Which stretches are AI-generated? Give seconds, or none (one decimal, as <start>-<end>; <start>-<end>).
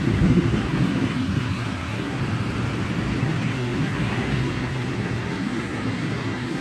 0.0-2.2; 3.2-6.6